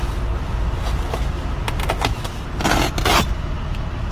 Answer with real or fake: real